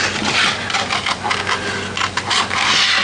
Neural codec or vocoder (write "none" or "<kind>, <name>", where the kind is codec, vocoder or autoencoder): none